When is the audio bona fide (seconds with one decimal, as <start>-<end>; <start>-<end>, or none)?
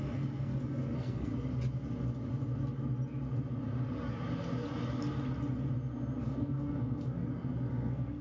1.3-6.2; 7.2-7.7